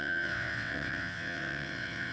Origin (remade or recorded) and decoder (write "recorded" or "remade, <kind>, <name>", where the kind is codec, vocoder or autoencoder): remade, vocoder, WaveNeXt